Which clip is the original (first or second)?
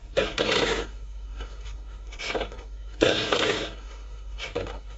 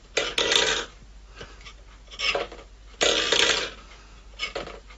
second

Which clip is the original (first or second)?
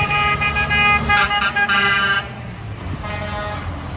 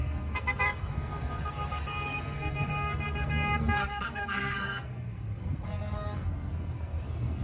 first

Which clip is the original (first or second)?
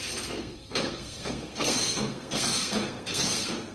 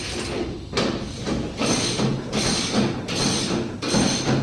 second